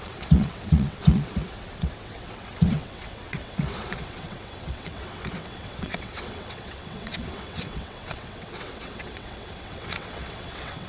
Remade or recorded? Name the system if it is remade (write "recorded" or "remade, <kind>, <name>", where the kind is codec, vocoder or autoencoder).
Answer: remade, vocoder, WaveNeXt